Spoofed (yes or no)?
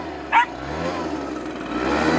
no